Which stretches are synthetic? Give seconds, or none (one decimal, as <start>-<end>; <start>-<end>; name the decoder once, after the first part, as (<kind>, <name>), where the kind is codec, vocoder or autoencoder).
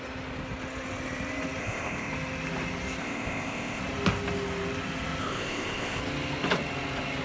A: 1.6-2.1 (codec, ZipCodec); 3.0-3.8; 5.2-6.0